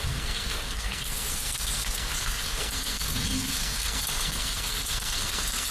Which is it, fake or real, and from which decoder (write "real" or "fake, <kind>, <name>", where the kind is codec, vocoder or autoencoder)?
fake, codec, SNAC